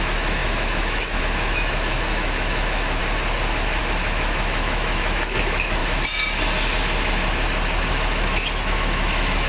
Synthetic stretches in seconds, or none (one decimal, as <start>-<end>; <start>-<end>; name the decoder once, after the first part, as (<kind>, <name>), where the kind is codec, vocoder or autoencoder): 0.0-3.0 (autoencoder, DAC-VAE); 3.8-5.8; 7.9-9.5